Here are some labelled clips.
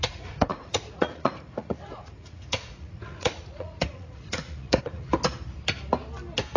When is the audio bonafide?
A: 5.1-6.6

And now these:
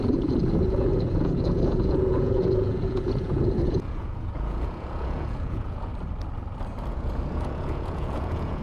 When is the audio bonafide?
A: 5.9-6.9

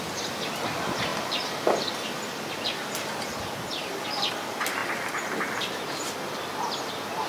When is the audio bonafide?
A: 0.0-7.3

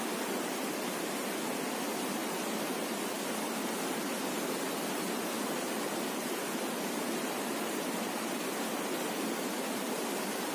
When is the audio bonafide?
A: 0.0-10.5

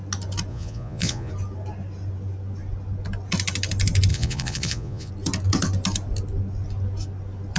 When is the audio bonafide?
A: 0.0-0.5; 1.3-4.1; 5.1-7.6

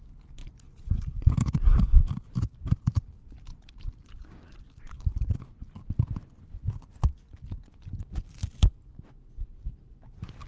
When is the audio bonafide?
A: 0.0-0.4; 5.3-10.5

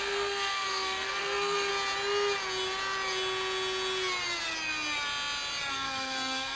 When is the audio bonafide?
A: 1.7-5.7

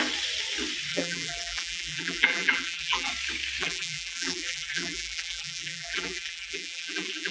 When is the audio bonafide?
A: 0.0-0.9; 3.1-3.6